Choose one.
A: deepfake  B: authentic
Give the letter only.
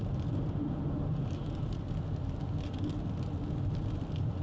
B